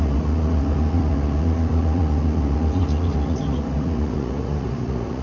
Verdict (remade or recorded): remade